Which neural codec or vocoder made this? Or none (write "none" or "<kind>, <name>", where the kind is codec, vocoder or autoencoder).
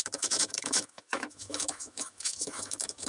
autoencoder, DAC-VAE